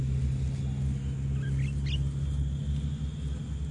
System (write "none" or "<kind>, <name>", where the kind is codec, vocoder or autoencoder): none